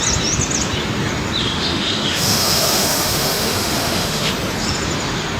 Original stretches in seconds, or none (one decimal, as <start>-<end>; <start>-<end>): 0.0-1.4; 4.3-5.4